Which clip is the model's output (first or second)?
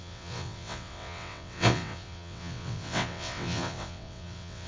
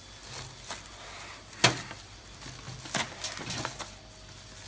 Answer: first